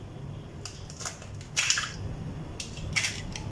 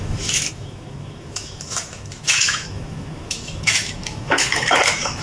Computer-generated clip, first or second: second